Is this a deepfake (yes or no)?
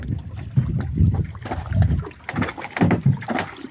no